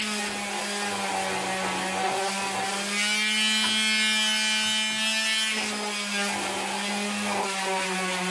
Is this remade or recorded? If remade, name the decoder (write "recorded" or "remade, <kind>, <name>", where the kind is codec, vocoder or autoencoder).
recorded